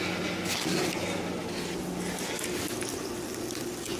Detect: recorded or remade recorded